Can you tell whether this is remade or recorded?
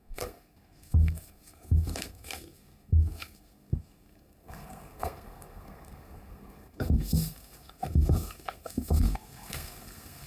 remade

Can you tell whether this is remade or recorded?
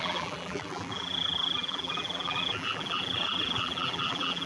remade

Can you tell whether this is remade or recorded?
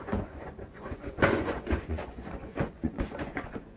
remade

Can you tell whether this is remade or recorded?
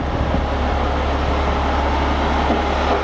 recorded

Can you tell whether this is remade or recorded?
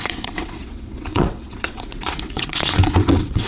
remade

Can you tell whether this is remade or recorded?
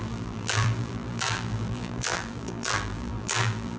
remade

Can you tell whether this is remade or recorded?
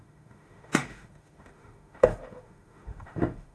remade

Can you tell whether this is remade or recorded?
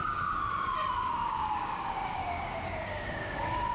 remade